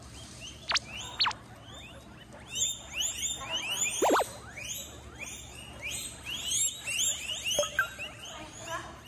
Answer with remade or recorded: recorded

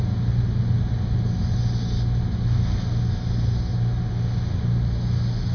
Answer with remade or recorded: recorded